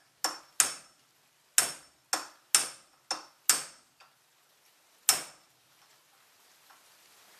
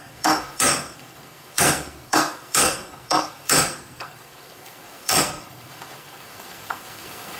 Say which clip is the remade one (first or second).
second